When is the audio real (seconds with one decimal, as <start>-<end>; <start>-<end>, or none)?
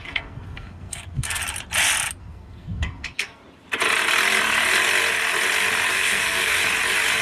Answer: 1.4-2.2; 3.4-5.9; 6.6-7.2